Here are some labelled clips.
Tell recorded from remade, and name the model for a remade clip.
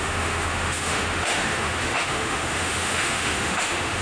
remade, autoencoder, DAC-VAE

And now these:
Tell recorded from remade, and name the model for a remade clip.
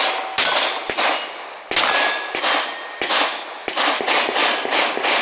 recorded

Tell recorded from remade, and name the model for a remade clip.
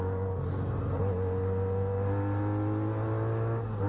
recorded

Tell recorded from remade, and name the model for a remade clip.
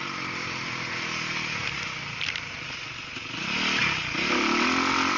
recorded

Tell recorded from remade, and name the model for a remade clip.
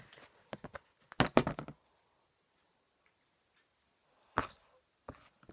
recorded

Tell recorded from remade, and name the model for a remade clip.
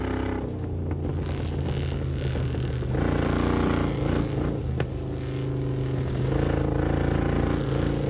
recorded